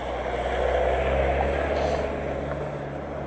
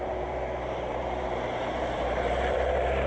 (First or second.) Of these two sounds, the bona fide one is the first